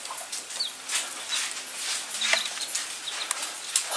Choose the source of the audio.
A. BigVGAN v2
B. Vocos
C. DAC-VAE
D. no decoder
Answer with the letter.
D